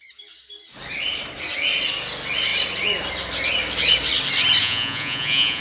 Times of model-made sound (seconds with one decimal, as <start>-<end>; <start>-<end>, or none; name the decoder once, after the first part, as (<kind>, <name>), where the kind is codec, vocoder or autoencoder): 4.6-5.6 (vocoder, Vocos)